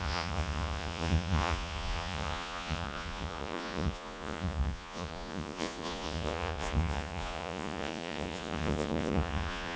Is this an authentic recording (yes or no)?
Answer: no